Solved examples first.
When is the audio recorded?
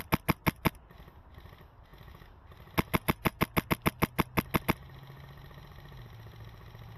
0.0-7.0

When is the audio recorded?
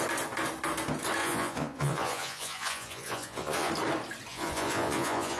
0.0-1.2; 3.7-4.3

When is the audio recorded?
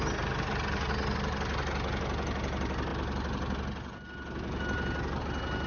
0.0-5.7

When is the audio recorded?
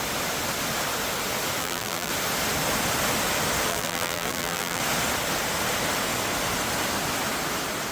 0.0-1.6; 2.1-3.7; 4.8-7.9